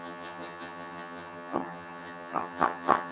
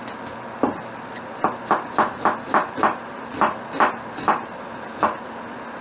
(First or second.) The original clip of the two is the second